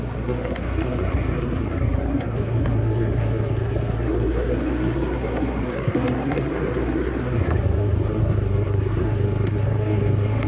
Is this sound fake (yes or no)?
yes